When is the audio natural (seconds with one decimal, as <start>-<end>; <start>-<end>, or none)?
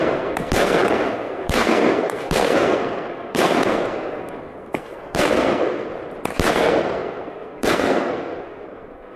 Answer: 5.9-6.5